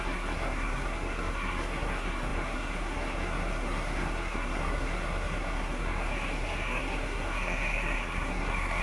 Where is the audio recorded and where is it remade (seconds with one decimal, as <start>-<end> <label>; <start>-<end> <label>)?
0.0-8.8 remade